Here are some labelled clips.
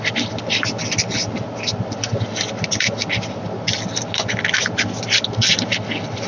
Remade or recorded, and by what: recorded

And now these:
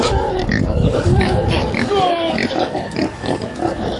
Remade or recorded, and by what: remade, codec, DAC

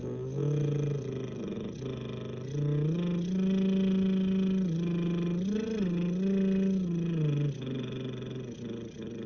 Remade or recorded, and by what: recorded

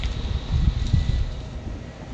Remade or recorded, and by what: recorded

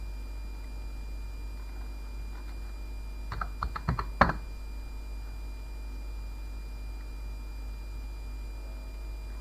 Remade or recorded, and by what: recorded